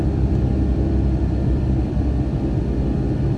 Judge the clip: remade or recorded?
remade